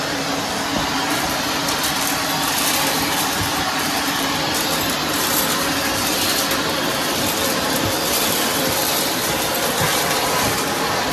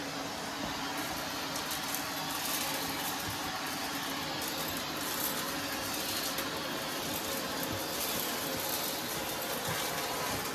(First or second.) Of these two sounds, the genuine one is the second